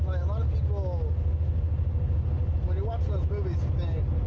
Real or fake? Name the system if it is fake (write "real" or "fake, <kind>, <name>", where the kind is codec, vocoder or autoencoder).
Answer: real